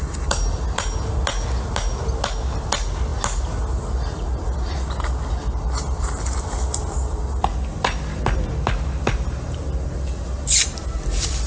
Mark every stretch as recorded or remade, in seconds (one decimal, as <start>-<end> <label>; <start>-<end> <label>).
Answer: 0.0-11.5 recorded